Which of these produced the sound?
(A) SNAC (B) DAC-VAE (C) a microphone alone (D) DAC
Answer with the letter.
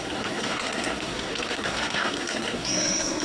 A